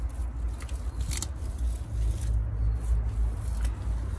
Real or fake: real